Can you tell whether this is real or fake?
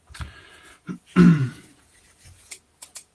fake